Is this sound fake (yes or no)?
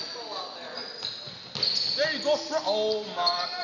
no